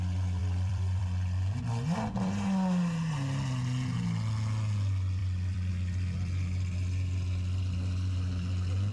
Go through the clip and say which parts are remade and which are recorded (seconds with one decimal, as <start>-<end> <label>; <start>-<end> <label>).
0.0-0.4 recorded; 0.4-1.0 remade; 1.0-5.2 recorded; 5.2-5.7 remade; 5.7-8.9 recorded